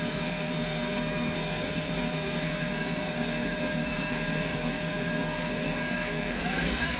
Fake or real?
fake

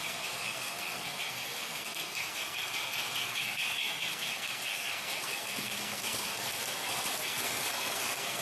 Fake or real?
fake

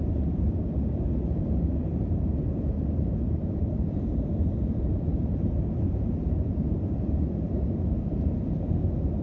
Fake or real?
fake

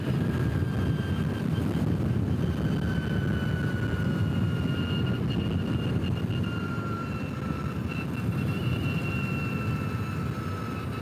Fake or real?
real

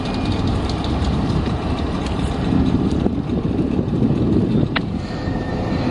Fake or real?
fake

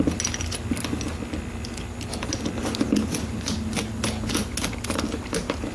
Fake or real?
real